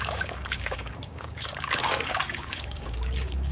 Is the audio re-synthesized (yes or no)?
yes